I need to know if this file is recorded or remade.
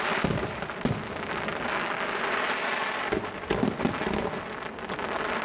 recorded